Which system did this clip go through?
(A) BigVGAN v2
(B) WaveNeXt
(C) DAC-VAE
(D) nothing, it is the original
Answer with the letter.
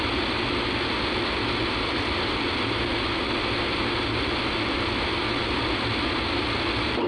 D